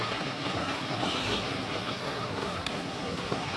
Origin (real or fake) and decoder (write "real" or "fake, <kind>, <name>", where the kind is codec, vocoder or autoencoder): fake, codec, SNAC